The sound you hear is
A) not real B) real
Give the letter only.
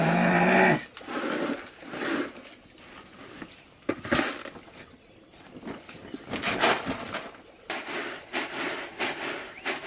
B